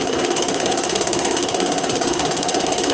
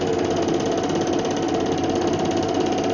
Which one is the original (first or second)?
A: second